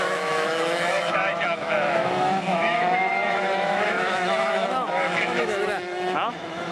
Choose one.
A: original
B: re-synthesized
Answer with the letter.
B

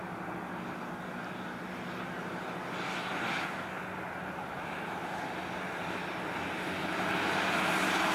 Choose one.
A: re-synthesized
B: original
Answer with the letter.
B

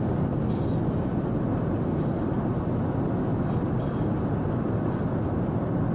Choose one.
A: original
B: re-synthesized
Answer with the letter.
A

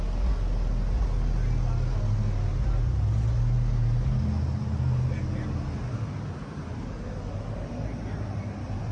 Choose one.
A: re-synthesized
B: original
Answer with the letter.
B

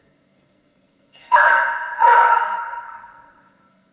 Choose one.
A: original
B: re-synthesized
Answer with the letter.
B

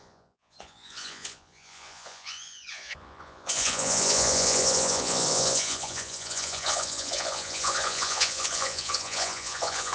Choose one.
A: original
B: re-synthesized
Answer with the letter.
B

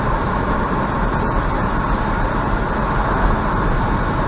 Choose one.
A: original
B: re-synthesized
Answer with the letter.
A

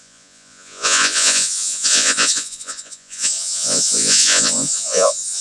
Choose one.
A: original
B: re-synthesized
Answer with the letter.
B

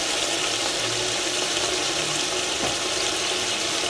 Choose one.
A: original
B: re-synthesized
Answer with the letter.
A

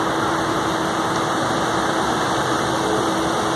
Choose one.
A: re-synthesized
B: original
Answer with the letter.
B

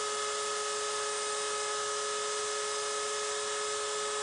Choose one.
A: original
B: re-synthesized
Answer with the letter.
A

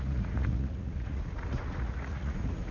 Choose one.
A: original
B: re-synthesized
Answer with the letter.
B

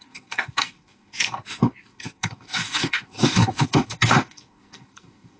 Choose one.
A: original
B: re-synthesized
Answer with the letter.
B